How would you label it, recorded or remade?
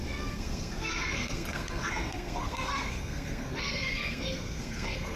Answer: remade